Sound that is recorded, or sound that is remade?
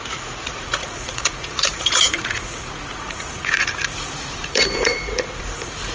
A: remade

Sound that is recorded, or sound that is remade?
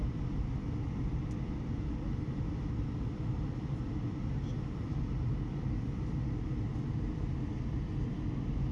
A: recorded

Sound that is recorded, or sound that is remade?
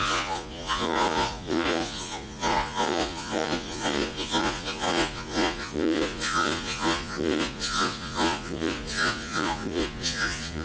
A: remade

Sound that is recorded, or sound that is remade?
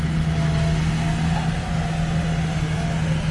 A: recorded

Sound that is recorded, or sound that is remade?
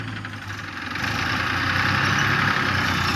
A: recorded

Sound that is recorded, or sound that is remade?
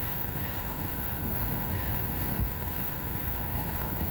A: remade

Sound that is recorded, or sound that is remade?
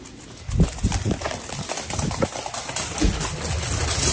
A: recorded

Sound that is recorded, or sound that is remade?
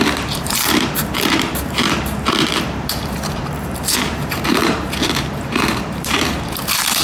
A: remade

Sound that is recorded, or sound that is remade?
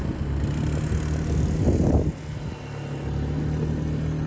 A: recorded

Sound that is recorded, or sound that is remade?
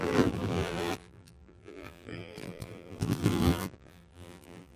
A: remade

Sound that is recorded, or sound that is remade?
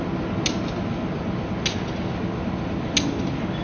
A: recorded